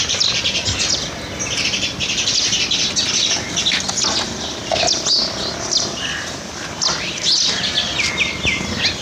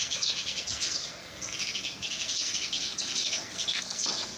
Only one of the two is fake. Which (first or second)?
second